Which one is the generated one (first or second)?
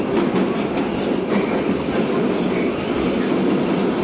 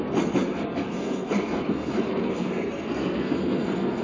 second